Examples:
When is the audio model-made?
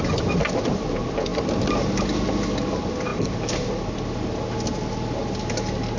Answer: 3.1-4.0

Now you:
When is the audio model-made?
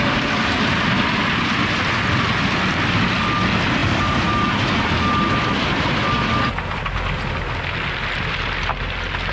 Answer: none